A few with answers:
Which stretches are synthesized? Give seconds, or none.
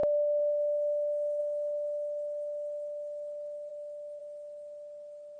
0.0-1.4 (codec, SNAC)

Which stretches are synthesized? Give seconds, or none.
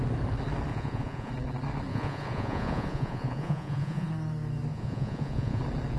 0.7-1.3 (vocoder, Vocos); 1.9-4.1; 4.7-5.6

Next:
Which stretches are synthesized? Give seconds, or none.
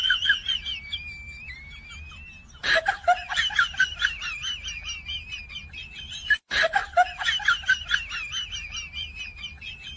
0.0-6.8 (vocoder, BigVGAN v2); 8.5-10.0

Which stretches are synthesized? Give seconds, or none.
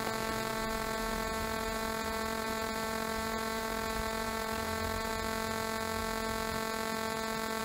0.5-5.1 (vocoder, BigVGAN v2)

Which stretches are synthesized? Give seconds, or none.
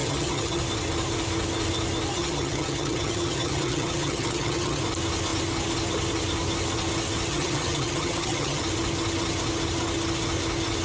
0.0-0.6 (vocoder, HiFi-GAN); 2.1-4.8; 7.3-8.6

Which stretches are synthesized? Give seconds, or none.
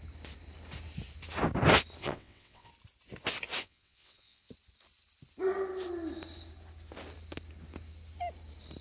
2.0-2.7 (vocoder, WaveNeXt); 3.6-4.5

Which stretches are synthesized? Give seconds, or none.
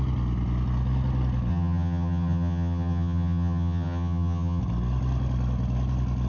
1.5-4.6 (vocoder, HiFi-GAN)